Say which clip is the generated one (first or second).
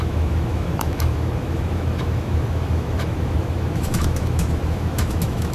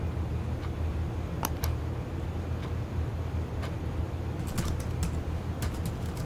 first